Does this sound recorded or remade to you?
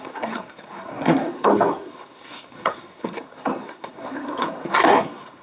remade